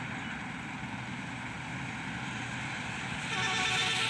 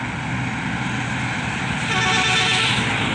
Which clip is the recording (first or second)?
second